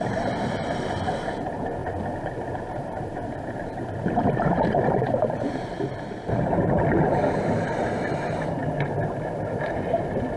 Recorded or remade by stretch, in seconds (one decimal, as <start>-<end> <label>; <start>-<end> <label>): 0.0-1.8 remade; 1.8-2.5 recorded; 2.5-10.4 remade